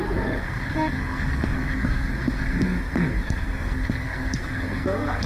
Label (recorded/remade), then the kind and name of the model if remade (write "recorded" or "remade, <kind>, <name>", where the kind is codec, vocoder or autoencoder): remade, codec, SNAC